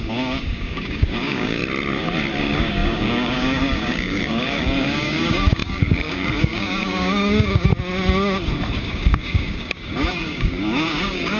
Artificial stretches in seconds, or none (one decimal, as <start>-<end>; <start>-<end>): 0.0-1.6; 2.4-7.7; 8.8-11.4